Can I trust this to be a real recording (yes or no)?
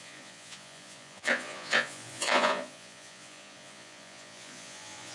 no